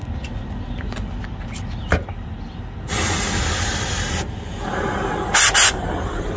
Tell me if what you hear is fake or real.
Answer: real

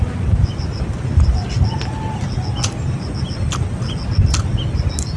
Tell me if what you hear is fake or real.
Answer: real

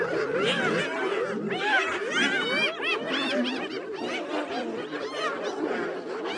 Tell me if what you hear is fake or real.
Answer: real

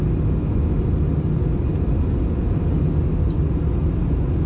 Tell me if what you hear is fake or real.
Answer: real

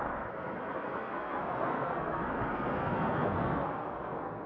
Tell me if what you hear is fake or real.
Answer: fake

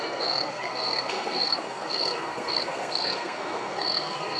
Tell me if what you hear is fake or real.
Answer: fake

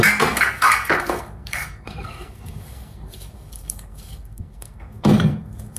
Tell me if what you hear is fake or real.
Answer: fake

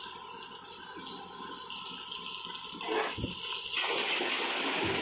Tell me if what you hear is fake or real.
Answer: real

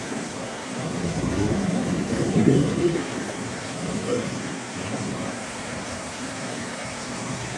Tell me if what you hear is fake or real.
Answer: fake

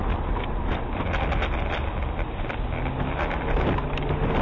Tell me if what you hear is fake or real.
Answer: real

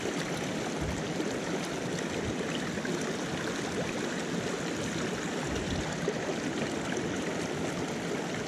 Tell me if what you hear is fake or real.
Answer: real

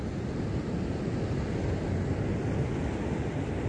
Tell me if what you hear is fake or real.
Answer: real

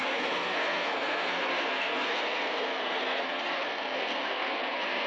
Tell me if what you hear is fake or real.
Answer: fake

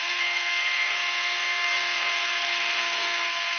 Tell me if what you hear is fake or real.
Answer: fake